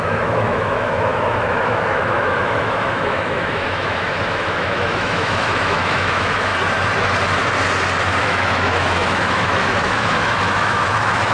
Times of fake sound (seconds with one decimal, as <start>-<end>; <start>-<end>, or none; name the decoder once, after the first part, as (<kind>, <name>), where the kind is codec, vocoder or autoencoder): 0.0-6.5 (autoencoder, DAC-VAE); 8.2-11.3